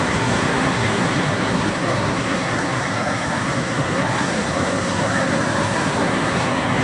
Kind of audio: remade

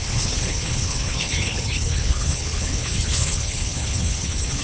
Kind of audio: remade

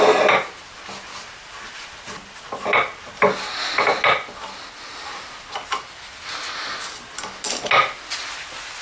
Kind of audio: recorded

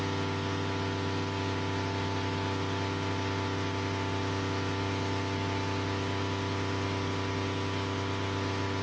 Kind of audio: recorded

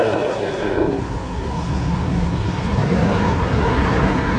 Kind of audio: remade